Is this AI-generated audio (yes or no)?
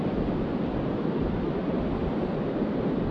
no